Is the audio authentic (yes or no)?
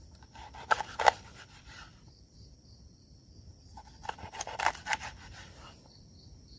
no